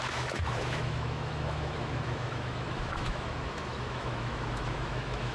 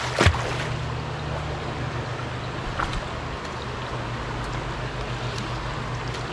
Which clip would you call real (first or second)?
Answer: second